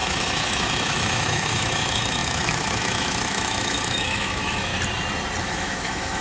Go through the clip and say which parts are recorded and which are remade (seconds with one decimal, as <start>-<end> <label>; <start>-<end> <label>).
0.0-4.7 remade; 4.7-5.4 recorded; 5.4-6.2 remade